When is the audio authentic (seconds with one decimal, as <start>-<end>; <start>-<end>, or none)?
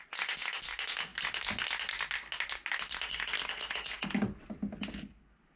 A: 0.0-5.6